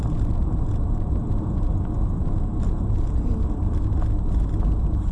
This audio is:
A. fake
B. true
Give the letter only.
B